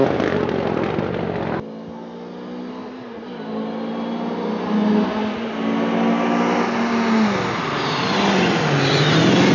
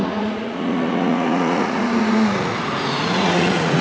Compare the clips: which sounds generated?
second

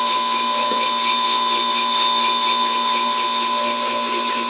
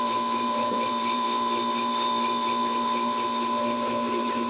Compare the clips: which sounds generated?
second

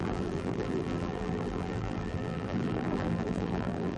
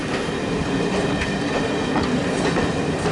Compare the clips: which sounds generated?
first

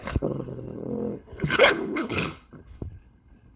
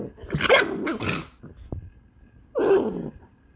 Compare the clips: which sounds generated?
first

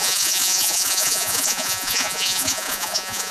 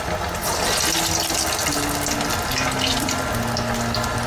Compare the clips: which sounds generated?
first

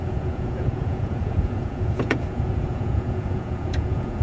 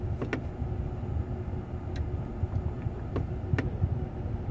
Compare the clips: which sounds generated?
first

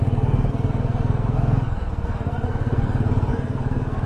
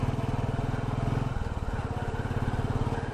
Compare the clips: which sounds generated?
first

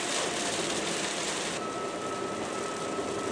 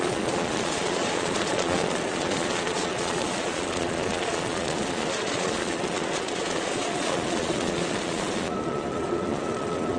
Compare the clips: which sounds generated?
second